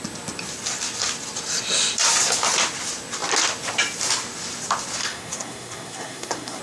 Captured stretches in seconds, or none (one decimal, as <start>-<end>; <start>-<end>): 0.0-5.0